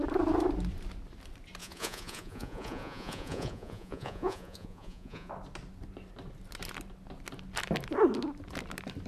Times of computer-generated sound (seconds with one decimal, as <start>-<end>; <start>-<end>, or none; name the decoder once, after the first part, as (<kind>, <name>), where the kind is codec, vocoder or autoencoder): 1.6-5.3 (vocoder, Vocos)